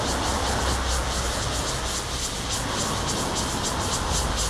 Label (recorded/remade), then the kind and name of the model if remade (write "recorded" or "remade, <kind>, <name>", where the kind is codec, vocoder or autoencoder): recorded